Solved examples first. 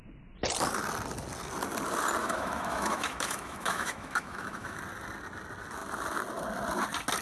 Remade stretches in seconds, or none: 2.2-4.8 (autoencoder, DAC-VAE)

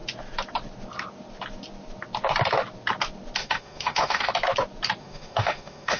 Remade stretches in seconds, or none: 3.4-4.3 (autoencoder, DAC-VAE); 5.0-6.0

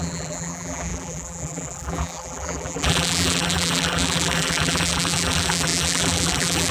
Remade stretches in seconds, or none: 0.0-6.7 (vocoder, BigVGAN v2)

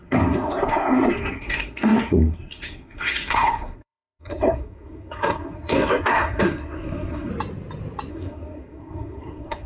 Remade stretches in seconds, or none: 0.0-7.3 (codec, SNAC); 8.1-9.7

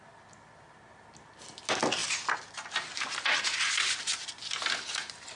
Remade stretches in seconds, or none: none

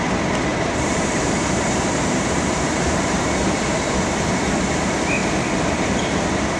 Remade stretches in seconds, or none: 0.5-4.5 (vocoder, BigVGAN v2)